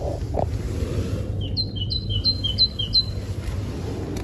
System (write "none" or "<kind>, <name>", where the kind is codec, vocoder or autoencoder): none